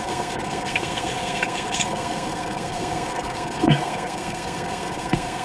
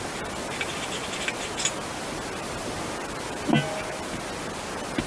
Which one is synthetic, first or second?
first